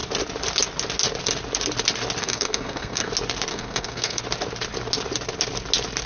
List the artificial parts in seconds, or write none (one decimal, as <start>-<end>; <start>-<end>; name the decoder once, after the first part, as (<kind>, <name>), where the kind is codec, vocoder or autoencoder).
2.2-3.1 (codec, SNAC); 3.5-4.2